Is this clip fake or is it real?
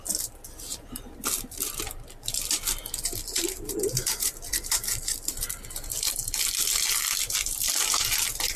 fake